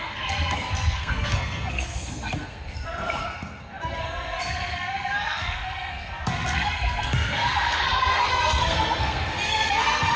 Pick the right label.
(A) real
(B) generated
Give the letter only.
B